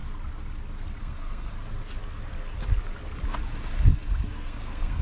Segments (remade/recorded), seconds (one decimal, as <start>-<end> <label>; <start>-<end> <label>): 0.0-1.0 recorded; 1.0-1.5 remade; 1.5-4.3 recorded; 4.3-5.0 remade